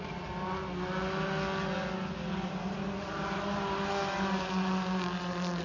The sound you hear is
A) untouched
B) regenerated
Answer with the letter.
A